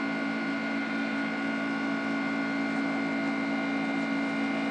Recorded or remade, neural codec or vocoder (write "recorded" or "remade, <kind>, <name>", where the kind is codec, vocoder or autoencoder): recorded